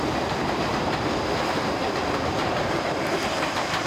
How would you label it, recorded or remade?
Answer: remade